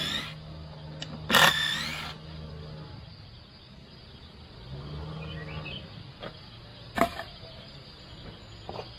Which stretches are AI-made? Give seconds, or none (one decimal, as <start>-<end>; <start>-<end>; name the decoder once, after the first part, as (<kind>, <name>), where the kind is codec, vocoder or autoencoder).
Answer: 6.7-8.0 (vocoder, BigVGAN v2)